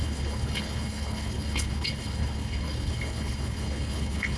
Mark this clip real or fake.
fake